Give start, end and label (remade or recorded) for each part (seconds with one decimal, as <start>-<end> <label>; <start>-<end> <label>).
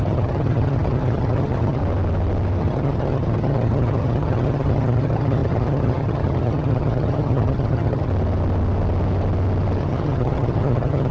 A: 0.0-1.8 remade; 1.8-2.6 recorded; 2.6-8.1 remade; 8.1-9.8 recorded; 9.8-11.1 remade